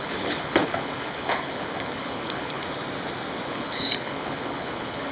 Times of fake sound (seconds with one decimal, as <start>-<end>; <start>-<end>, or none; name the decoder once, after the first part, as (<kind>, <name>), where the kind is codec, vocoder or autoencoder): 0.0-2.6 (codec, HILCodec); 3.5-5.1